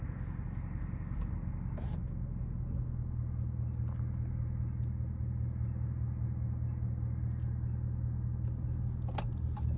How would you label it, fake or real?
real